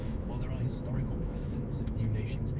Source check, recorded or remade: remade